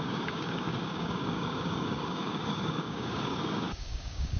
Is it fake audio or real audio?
fake